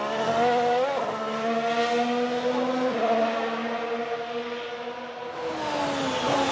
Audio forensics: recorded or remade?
recorded